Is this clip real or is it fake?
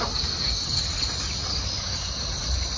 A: real